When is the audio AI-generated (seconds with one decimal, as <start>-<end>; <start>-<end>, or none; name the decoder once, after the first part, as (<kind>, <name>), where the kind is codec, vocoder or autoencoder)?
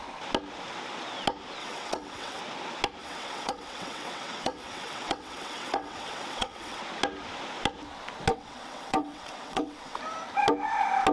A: 1.6-2.4 (vocoder, WaveNeXt); 3.0-6.8; 8.3-10.0